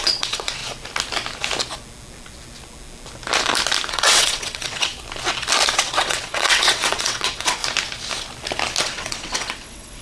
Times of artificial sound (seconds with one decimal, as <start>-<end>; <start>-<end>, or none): 0.0-0.6; 3.9-4.9; 5.7-7.6; 8.8-10.0